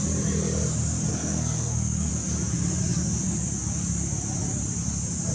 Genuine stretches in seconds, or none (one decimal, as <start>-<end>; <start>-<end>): 0.0-1.1; 2.1-5.3